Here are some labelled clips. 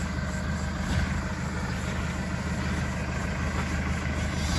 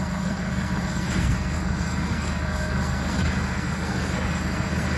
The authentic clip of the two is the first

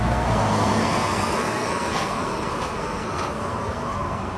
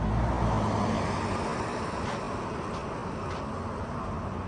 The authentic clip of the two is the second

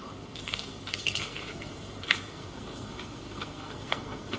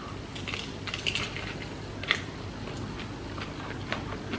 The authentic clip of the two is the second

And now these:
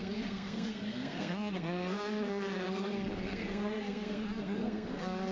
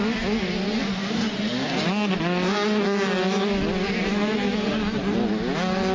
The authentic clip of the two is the second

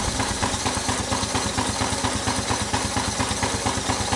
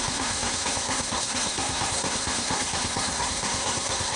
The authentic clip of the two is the first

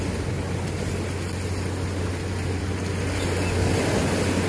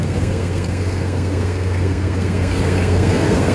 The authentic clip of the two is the first